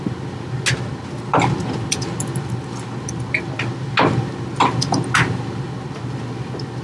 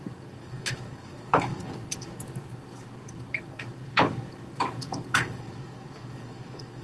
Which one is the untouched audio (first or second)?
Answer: first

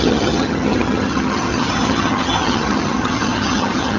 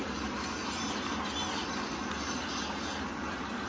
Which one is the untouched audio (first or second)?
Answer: second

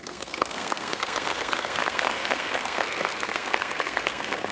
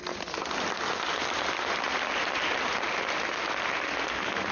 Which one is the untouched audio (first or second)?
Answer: second